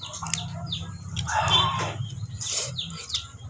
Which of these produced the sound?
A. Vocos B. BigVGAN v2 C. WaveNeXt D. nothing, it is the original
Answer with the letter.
D